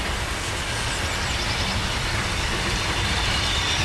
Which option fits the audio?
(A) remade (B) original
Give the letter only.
B